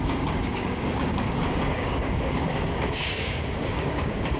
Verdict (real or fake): fake